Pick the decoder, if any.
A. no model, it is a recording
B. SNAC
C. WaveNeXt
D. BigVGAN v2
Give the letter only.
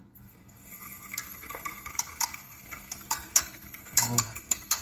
B